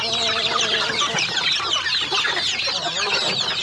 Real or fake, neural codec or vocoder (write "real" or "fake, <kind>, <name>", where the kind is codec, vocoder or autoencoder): real